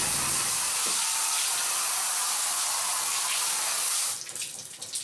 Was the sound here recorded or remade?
recorded